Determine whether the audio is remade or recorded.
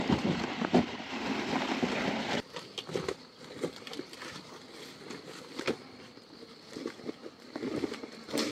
recorded